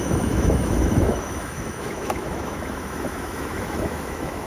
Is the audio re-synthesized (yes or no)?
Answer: yes